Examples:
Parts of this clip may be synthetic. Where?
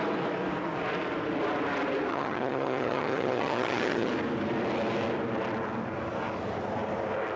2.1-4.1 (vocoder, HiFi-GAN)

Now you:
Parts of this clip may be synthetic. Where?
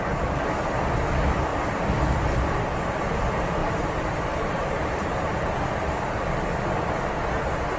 3.6-7.1 (vocoder, BigVGAN v2)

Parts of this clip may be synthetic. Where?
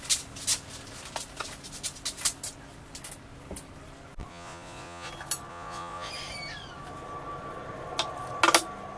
4.3-5.1 (vocoder, Vocos); 5.5-6.1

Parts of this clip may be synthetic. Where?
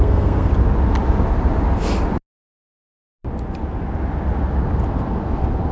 0.0-0.5 (codec, SNAC)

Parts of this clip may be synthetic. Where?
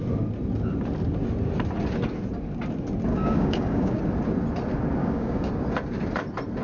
3.1-4.0 (codec, DAC); 5.0-5.5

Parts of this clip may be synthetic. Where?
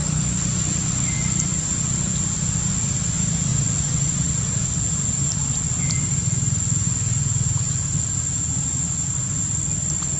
none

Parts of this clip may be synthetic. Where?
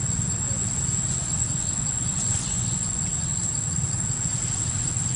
1.2-3.1 (vocoder, Vocos)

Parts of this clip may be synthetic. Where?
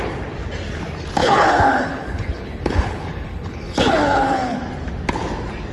1.2-4.6 (codec, HILCodec)